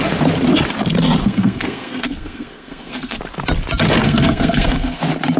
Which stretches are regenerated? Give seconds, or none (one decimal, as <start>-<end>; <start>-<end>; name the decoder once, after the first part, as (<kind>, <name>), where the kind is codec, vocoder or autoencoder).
1.2-3.2 (codec, SNAC); 4.0-5.0